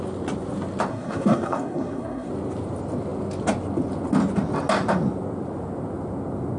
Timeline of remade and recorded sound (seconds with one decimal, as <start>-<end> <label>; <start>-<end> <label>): 0.0-0.9 recorded; 0.9-2.3 remade; 2.3-6.6 recorded